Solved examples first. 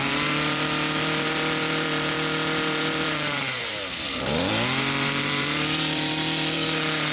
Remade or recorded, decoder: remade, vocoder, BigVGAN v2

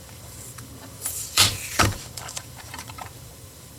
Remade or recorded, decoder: remade, vocoder, BigVGAN v2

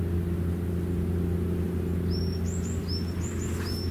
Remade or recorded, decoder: recorded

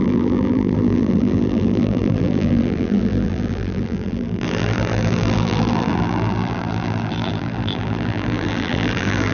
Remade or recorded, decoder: remade, vocoder, BigVGAN v2